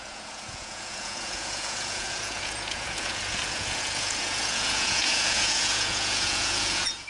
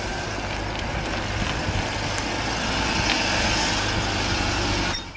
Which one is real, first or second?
second